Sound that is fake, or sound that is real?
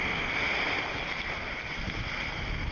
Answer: real